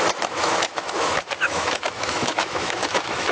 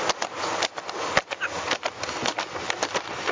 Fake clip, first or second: first